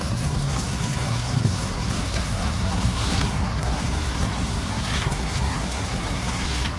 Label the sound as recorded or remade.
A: remade